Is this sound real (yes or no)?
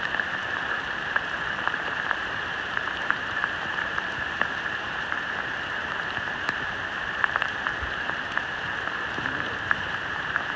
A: no